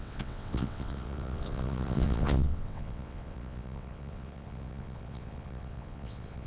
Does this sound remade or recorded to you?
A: remade